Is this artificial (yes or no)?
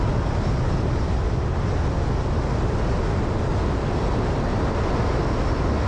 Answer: no